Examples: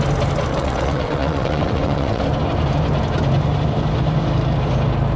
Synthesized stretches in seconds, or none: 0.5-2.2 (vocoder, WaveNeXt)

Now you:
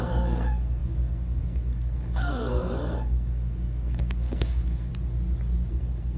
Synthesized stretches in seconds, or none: 0.0-4.9 (codec, SNAC); 5.7-6.2

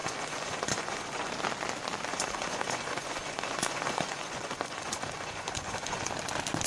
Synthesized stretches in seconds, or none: 0.0-1.3 (vocoder, Vocos); 2.1-6.1

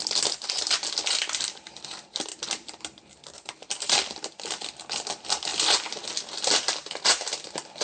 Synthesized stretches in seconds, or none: none

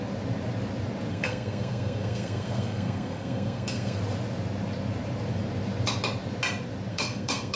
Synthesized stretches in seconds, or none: 1.1-4.0 (codec, SNAC); 6.9-7.6

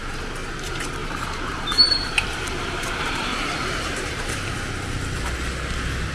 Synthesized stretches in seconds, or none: 1.0-4.7 (vocoder, BigVGAN v2)

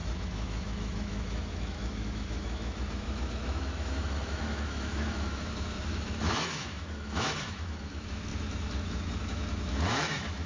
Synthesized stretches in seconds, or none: 0.0-10.5 (autoencoder, DAC-VAE)